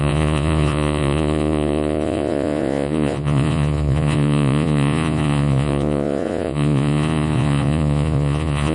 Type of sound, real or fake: fake